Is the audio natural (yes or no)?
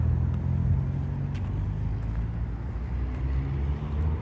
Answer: yes